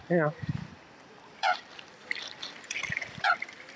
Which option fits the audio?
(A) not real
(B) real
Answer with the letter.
A